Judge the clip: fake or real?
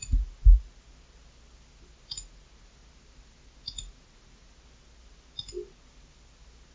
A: real